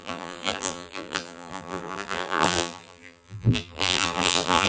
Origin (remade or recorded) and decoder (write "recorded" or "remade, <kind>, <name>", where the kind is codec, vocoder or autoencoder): remade, vocoder, BigVGAN v2